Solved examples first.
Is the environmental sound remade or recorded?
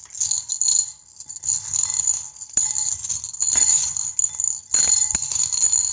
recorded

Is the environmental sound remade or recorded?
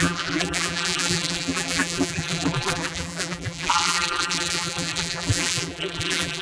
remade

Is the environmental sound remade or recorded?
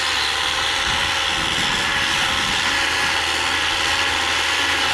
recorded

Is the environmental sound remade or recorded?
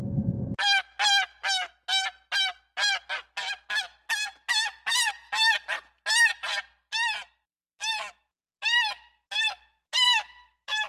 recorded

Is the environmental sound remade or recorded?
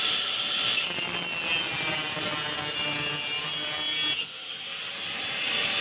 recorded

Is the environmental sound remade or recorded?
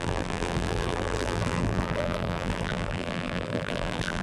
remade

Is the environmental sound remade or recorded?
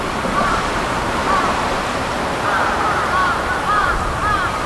remade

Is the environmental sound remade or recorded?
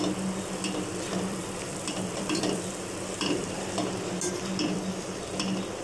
remade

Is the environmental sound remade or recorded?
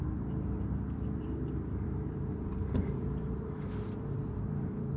remade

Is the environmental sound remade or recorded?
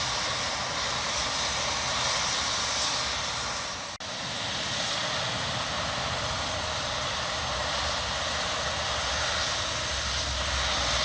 recorded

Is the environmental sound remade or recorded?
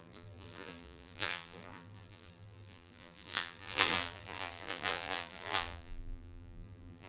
remade